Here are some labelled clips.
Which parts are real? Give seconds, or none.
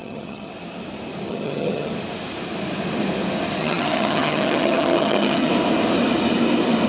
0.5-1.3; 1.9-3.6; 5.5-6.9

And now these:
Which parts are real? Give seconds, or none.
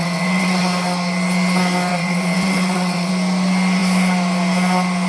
0.6-1.9; 3.1-5.1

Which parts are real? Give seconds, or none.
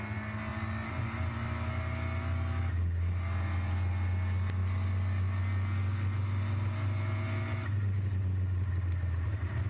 0.0-9.7